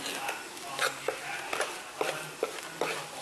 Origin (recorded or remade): recorded